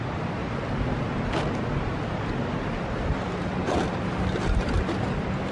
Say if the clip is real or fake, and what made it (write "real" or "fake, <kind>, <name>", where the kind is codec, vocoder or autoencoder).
real